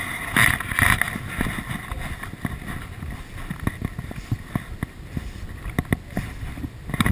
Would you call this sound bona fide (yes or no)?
yes